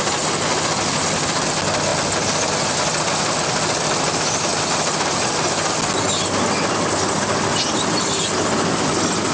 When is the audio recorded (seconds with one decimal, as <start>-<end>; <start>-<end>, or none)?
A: 0.0-9.3